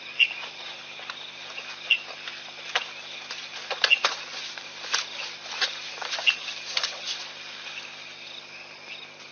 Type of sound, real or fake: real